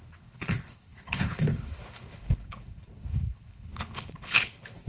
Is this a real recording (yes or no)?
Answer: no